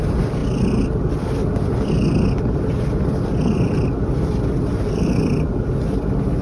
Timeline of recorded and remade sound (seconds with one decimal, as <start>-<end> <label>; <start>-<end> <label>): 0.0-6.4 recorded